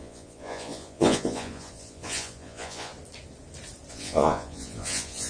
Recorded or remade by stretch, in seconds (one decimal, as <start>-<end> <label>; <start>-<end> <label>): 0.0-2.9 remade; 2.9-3.9 recorded; 3.9-5.3 remade